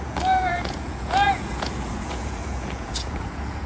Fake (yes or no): yes